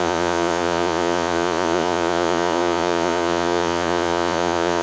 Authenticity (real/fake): fake